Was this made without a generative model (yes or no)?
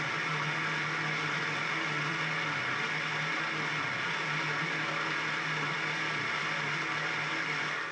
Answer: yes